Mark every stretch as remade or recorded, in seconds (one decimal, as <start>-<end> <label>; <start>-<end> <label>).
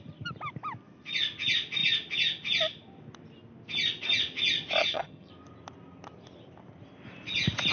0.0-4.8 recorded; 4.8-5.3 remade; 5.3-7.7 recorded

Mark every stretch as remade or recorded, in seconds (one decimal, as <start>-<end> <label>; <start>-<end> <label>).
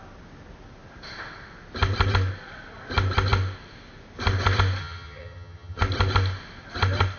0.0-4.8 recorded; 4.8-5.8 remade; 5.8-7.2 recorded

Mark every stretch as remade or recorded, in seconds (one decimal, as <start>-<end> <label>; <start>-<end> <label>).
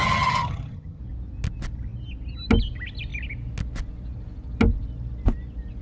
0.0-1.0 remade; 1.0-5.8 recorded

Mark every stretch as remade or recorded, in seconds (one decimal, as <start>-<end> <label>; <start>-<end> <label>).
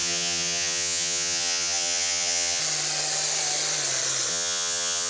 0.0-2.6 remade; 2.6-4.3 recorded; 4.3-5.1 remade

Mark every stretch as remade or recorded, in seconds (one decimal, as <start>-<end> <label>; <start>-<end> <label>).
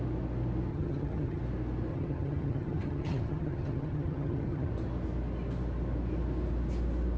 0.0-0.7 recorded; 0.7-1.4 remade; 1.4-1.9 recorded; 1.9-4.7 remade; 4.7-7.2 recorded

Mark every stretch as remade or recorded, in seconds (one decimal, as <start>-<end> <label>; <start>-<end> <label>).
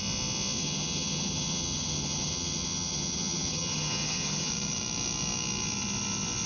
0.0-0.6 recorded; 0.6-4.5 remade; 4.5-6.5 recorded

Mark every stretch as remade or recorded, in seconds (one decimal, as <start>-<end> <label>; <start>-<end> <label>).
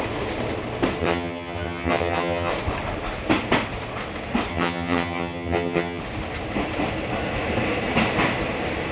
0.0-1.0 recorded; 1.0-2.5 remade; 2.5-4.5 recorded; 4.5-6.0 remade; 6.0-8.9 recorded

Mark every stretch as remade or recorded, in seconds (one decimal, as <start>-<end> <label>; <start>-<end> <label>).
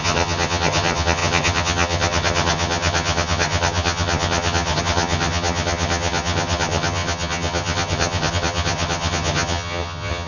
0.0-10.3 remade